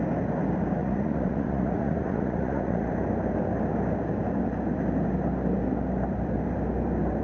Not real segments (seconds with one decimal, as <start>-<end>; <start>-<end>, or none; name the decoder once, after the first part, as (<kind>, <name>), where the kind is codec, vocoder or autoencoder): 0.8-2.9 (vocoder, Vocos)